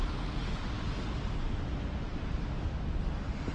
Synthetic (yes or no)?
no